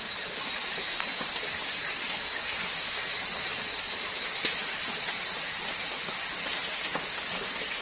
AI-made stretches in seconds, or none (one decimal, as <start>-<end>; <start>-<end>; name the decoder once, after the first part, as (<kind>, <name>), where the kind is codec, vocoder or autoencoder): none